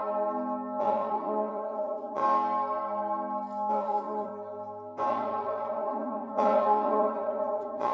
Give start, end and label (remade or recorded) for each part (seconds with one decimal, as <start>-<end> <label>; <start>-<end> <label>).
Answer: 0.0-0.8 recorded; 0.8-2.2 remade; 2.2-3.7 recorded; 3.7-4.3 remade; 4.3-5.1 recorded; 5.1-7.9 remade